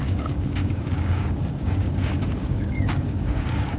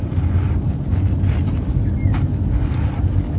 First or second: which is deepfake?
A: first